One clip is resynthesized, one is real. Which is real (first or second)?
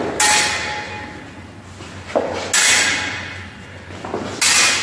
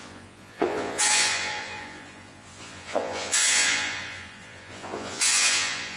first